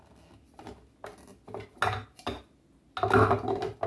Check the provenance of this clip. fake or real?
real